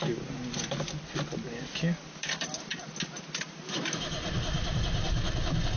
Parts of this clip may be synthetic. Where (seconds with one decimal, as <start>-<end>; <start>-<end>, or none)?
none